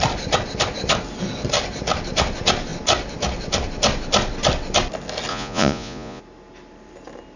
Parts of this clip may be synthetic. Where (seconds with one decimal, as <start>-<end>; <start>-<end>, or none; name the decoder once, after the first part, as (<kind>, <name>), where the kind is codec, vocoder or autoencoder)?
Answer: 5.3-6.2 (vocoder, Vocos)